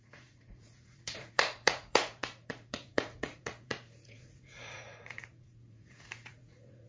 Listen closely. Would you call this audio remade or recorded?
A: remade